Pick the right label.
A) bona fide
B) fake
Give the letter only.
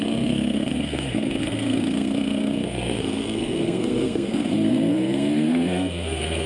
B